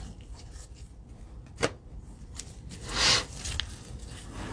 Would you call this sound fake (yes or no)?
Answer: no